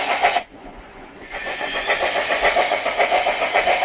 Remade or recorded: remade